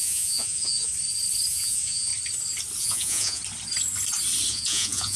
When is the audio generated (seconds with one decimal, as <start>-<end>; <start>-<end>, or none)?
0.0-0.9; 1.5-2.1; 2.8-3.4; 4.5-5.2